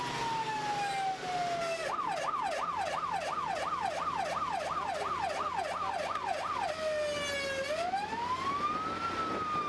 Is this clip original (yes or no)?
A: yes